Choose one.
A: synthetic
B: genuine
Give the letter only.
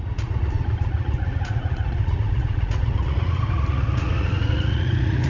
A